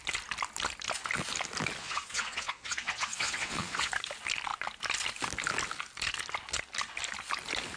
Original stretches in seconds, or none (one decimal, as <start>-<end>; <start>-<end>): 0.0-1.8; 3.9-7.8

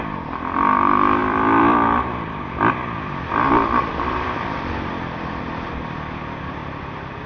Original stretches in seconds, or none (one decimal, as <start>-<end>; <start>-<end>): 0.0-1.2; 5.4-6.6

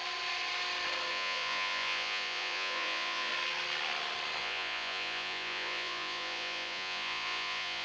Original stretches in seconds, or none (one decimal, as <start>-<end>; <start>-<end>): 0.0-1.1; 3.3-4.4

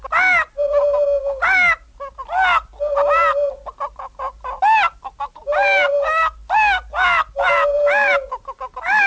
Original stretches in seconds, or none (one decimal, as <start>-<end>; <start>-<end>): 0.0-9.1

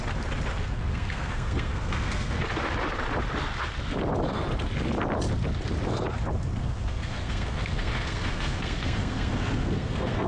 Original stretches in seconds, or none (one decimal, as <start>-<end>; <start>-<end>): 0.0-0.6; 2.4-6.6